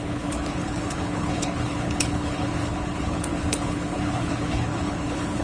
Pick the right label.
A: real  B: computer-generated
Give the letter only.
B